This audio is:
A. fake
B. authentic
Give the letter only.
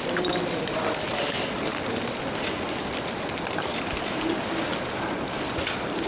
B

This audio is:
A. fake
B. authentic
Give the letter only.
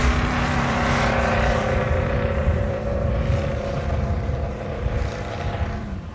A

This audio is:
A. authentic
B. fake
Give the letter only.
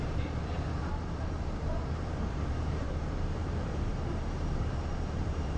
B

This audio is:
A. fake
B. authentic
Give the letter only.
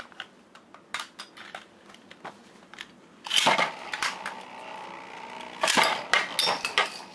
B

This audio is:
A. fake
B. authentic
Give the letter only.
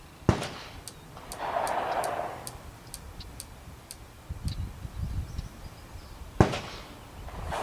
B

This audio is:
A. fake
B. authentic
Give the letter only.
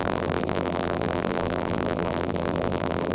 A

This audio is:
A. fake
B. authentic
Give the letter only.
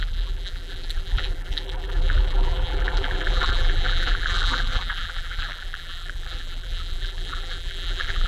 A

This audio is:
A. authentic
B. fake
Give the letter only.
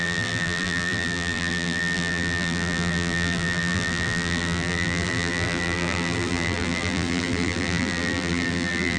B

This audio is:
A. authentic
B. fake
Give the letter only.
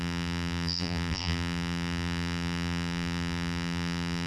B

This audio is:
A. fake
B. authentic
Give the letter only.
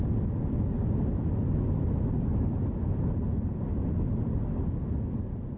B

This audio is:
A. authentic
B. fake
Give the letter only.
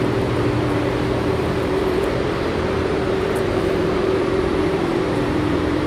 B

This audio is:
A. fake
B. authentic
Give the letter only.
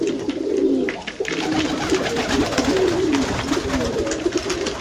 B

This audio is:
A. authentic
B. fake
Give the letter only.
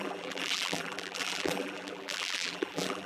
B